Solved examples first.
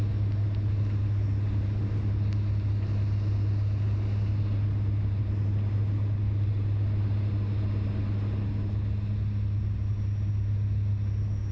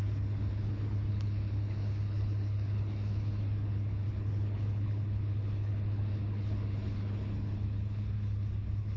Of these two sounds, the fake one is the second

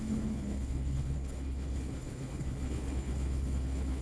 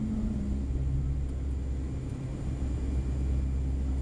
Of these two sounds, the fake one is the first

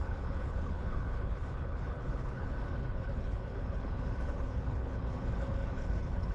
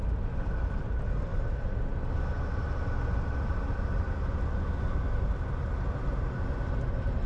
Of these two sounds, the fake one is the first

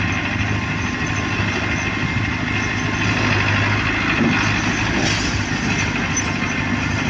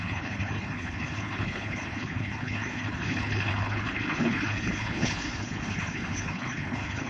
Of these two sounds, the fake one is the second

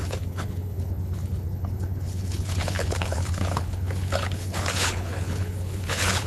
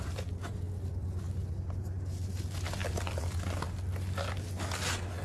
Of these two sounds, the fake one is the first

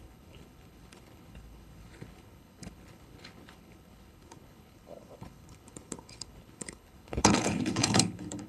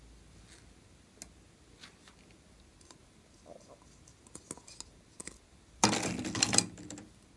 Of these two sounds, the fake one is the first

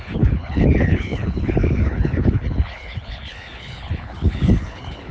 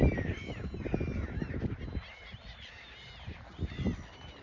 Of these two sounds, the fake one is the first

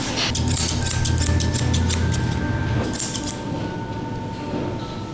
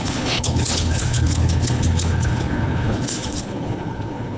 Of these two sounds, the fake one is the second